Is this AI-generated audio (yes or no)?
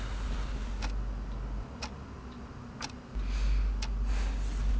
no